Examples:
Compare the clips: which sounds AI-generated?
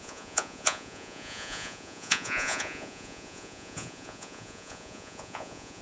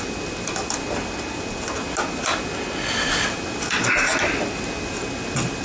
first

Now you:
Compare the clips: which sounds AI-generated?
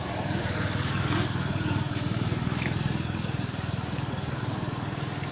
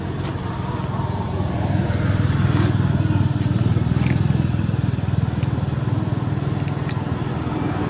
first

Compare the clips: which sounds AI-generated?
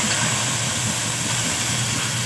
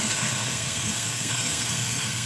second